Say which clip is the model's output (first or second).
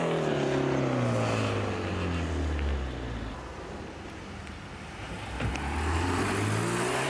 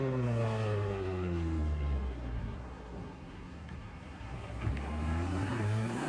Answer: second